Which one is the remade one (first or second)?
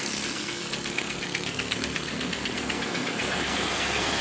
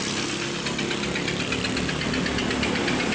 first